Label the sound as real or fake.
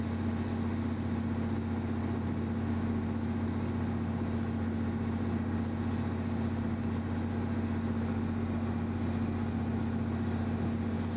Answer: real